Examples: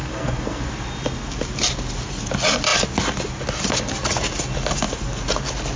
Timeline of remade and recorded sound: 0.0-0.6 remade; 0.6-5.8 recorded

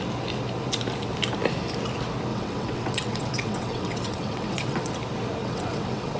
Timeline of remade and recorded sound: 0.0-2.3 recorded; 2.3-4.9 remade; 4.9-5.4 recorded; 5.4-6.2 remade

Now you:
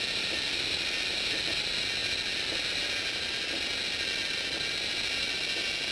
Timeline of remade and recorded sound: 0.0-5.9 recorded